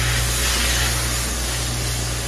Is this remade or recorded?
recorded